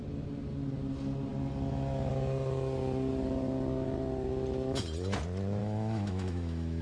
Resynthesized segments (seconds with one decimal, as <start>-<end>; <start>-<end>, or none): 5.6-6.8